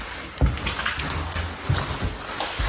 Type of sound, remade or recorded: recorded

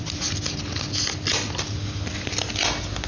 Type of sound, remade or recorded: recorded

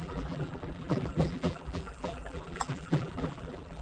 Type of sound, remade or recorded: remade